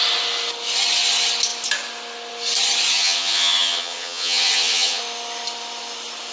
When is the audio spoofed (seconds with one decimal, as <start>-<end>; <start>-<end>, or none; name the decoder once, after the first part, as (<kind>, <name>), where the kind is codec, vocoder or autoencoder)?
2.9-5.0 (vocoder, HiFi-GAN)